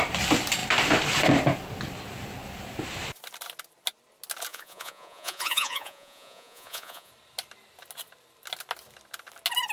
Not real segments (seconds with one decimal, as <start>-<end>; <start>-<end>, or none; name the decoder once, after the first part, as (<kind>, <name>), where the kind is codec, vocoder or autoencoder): 4.5-7.1 (vocoder, Vocos)